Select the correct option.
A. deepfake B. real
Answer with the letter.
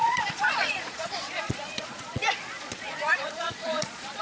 A